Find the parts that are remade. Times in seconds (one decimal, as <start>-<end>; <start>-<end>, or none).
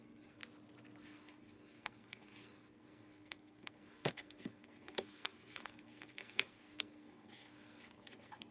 0.0-0.4; 1.0-8.5